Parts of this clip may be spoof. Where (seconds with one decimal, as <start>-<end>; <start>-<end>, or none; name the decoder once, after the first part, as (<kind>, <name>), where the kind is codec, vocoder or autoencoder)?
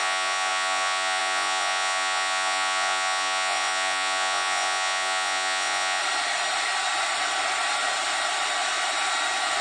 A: 0.0-6.0 (vocoder, Vocos)